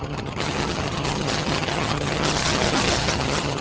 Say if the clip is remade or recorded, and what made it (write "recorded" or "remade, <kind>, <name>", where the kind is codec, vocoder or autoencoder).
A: remade, vocoder, HiFi-GAN